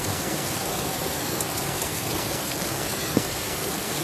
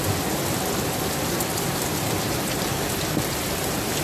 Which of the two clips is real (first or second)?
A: second